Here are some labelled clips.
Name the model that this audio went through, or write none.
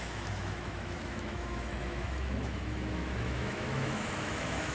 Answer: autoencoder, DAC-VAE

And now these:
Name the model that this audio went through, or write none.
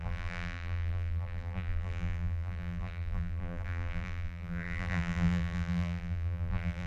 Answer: vocoder, BigVGAN v2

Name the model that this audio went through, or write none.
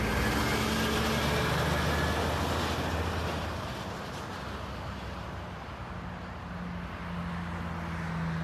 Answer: none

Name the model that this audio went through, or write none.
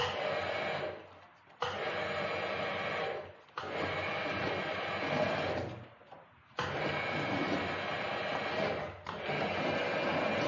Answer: none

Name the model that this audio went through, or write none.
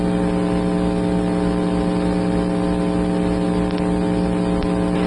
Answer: none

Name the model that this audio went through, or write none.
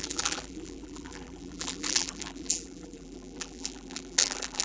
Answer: vocoder, BigVGAN v2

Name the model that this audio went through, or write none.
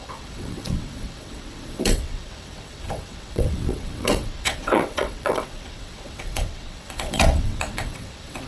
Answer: vocoder, WaveNeXt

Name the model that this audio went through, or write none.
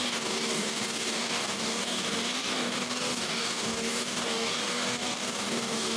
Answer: codec, DAC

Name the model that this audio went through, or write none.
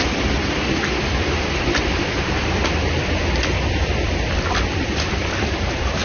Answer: vocoder, BigVGAN v2